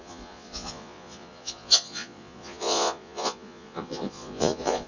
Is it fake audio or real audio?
fake